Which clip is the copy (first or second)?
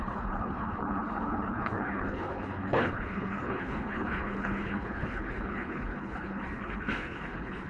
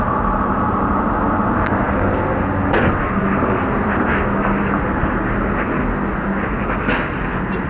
first